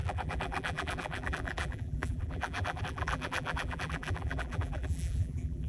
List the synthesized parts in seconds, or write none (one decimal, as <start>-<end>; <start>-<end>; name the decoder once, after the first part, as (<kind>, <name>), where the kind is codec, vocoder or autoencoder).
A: 0.0-5.7 (vocoder, BigVGAN v2)